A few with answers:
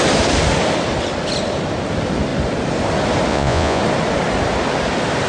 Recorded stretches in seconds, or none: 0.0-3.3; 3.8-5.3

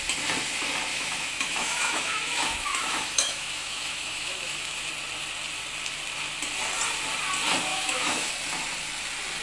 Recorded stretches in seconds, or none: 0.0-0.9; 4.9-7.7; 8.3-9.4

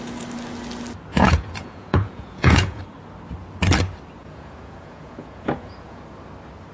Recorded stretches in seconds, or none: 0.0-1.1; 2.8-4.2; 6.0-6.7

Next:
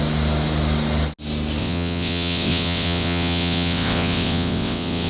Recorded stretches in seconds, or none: 0.0-1.6